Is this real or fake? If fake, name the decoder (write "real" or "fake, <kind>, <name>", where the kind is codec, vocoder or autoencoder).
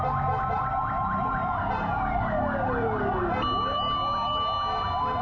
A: real